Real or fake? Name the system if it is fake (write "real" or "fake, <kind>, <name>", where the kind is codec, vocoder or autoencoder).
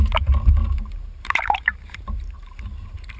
fake, vocoder, BigVGAN v2